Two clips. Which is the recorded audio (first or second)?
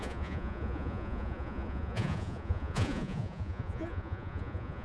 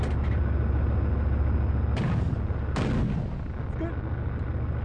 second